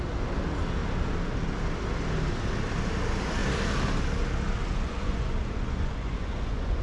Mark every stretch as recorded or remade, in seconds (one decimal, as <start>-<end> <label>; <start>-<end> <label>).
0.0-4.6 recorded; 4.6-6.8 remade